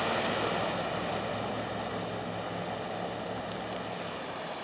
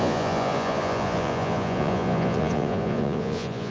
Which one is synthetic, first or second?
second